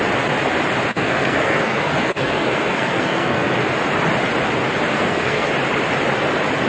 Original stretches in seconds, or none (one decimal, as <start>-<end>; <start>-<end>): 0.0-0.9; 3.6-4.9; 5.5-6.7